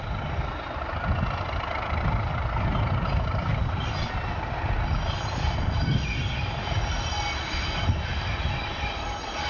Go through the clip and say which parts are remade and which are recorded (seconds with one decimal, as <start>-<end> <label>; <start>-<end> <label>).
0.0-9.5 recorded